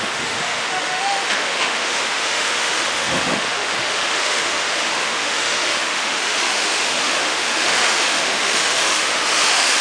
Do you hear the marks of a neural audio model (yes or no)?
yes